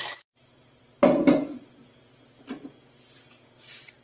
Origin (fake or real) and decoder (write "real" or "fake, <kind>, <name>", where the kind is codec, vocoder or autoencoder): real